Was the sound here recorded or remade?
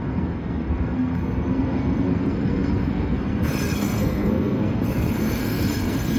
remade